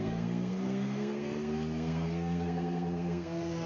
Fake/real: fake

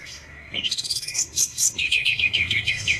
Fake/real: fake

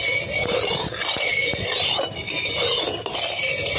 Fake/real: real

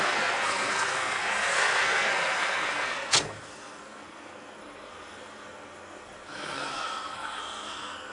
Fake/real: fake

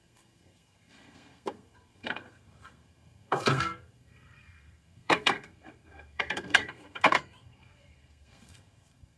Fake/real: fake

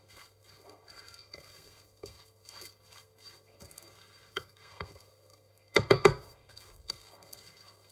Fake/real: fake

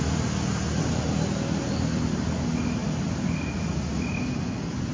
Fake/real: real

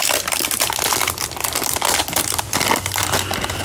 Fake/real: real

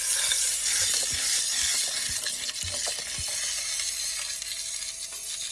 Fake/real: real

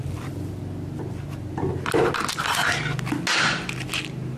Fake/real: real